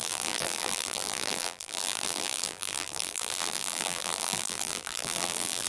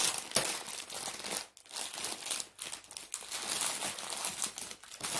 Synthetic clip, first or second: first